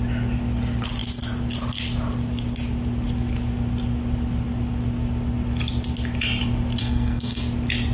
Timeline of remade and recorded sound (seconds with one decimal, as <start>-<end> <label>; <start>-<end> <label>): 0.0-6.8 recorded; 6.8-7.4 remade; 7.4-7.9 recorded